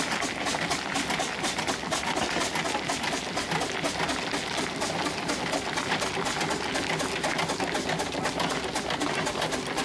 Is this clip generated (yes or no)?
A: no